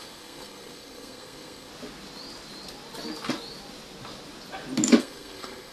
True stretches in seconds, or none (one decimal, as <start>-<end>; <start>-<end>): 1.7-5.0